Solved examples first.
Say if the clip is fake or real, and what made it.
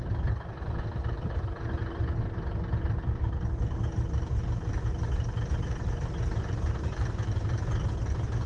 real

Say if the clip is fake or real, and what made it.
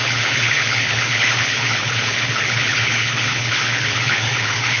fake, codec, HILCodec